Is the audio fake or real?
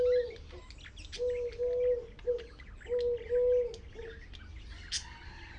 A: real